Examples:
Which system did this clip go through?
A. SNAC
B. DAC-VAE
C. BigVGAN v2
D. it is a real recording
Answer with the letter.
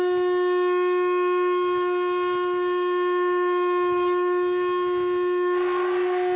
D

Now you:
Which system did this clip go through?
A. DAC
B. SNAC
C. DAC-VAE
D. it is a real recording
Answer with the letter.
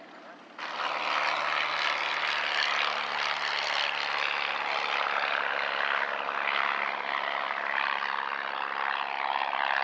D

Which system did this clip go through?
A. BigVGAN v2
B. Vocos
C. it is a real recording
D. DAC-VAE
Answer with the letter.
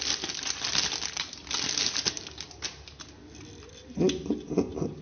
C